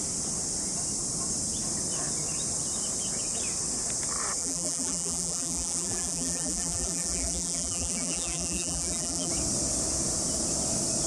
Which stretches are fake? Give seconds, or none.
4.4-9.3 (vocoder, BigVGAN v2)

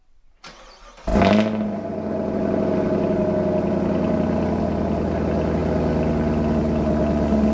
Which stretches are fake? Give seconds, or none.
none